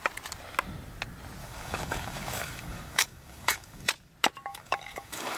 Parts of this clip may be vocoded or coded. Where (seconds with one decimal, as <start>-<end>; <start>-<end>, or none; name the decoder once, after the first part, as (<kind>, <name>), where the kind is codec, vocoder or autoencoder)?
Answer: 1.4-3.9 (codec, DAC); 4.5-5.4

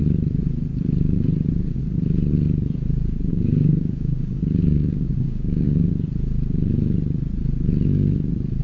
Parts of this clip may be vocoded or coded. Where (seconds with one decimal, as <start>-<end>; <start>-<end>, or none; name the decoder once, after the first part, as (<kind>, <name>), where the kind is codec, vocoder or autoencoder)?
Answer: 3.3-5.9 (codec, DAC)

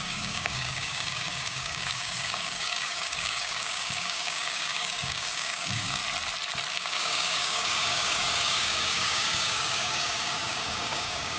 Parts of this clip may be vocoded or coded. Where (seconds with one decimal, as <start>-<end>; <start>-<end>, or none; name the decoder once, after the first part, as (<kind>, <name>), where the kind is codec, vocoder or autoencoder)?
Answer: 0.0-6.0 (codec, DAC); 6.7-11.4

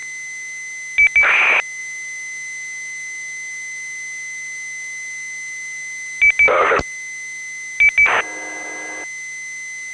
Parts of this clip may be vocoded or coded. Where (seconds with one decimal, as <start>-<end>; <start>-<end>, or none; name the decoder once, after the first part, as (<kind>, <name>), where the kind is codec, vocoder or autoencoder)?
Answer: none

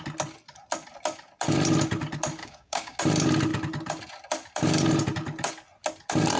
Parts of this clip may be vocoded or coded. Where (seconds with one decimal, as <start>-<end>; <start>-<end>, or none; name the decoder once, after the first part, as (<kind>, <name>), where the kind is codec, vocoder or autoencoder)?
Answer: 2.4-3.0 (codec, DAC)